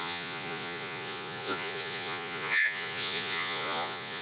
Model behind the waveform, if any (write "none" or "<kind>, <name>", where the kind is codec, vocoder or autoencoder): vocoder, Vocos